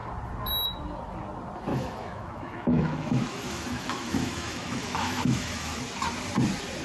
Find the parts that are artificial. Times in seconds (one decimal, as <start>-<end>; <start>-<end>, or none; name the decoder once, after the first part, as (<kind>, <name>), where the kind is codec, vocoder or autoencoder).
1.7-5.8 (autoencoder, DAC-VAE)

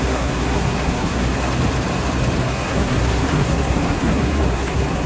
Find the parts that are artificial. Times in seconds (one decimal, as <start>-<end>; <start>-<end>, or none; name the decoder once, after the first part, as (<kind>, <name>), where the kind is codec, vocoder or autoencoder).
0.0-1.3 (codec, SNAC); 2.4-5.1